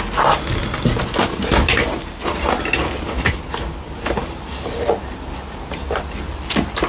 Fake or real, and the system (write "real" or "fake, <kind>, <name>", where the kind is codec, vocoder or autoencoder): real